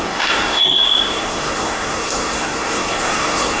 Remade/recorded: remade